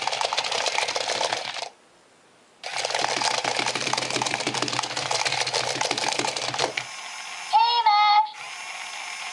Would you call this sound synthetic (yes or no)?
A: no